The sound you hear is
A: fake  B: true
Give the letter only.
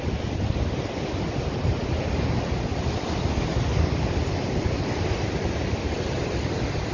B